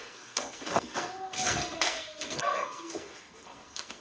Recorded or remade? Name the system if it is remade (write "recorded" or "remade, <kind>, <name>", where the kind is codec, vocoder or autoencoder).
remade, codec, SNAC